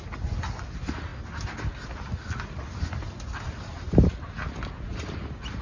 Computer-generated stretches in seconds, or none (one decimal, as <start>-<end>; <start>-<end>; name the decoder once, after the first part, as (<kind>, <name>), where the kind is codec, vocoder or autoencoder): 3.3-4.1 (vocoder, BigVGAN v2)